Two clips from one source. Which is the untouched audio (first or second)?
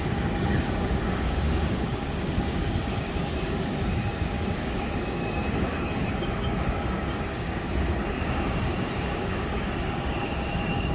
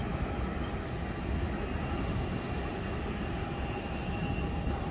second